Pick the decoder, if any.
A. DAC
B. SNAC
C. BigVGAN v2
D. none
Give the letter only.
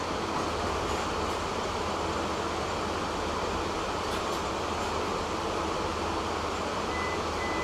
D